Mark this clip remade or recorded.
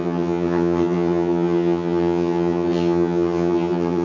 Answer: remade